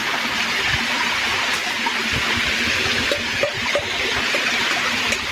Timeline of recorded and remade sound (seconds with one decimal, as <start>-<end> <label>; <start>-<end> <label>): 0.0-2.0 recorded; 2.0-3.5 remade; 3.5-4.7 recorded; 4.7-5.3 remade